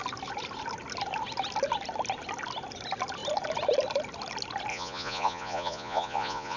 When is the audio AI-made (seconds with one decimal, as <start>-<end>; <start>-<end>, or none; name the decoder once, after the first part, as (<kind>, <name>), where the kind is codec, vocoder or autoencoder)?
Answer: 4.7-6.6 (vocoder, Vocos)